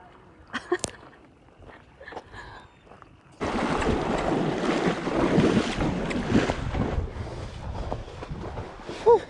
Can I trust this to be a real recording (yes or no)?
yes